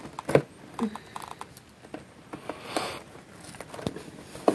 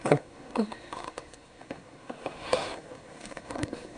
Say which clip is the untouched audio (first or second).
first